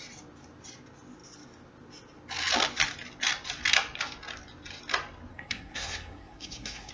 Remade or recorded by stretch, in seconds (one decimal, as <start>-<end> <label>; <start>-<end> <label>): 0.0-5.3 recorded; 5.3-6.9 remade